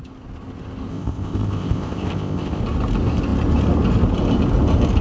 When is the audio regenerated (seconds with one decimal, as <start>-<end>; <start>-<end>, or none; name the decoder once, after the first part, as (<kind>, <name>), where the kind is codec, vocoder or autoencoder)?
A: 0.9-2.6 (codec, ZipCodec)

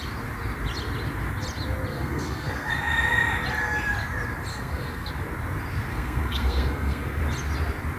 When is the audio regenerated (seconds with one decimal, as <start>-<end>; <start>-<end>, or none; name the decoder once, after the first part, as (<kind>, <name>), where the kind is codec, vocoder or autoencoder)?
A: 1.9-2.7 (codec, SNAC); 4.5-5.1; 5.9-7.2

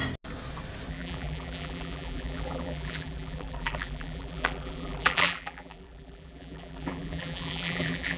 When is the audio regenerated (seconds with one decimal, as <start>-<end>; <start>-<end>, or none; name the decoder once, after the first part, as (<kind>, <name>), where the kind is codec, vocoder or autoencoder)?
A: 0.9-8.2 (vocoder, BigVGAN v2)

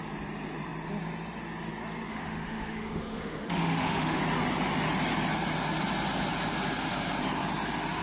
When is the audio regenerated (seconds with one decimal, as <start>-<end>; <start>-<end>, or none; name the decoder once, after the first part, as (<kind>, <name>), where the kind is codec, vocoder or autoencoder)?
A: 2.1-4.2 (autoencoder, DAC-VAE)

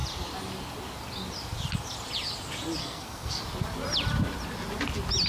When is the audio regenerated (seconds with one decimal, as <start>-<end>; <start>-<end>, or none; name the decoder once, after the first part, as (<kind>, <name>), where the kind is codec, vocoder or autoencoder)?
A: 2.8-3.4 (codec, SNAC)

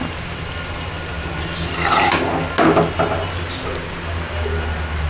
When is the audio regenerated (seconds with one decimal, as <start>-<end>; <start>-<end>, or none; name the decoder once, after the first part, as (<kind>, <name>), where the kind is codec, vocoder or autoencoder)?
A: none

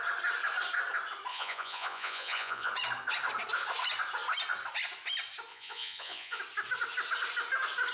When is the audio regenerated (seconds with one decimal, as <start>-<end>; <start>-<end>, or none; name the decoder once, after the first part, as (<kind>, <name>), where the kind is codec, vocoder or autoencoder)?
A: 1.3-2.7 (vocoder, Vocos); 5.5-6.4

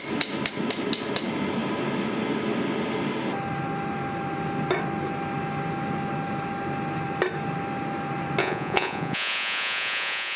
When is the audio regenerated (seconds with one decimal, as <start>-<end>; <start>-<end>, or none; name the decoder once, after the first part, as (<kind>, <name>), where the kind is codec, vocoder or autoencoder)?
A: 8.4-10.4 (vocoder, Vocos)